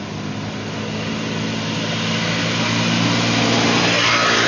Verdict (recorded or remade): recorded